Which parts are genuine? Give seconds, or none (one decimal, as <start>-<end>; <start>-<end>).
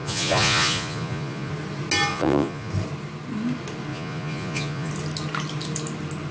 1.5-2.1; 2.7-3.9; 4.9-6.3